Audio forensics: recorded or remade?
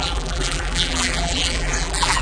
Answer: remade